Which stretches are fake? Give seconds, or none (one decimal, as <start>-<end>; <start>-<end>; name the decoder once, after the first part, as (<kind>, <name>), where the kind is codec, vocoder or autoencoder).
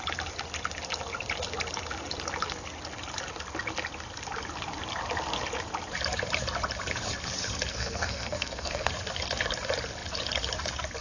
7.7-8.9 (codec, SNAC)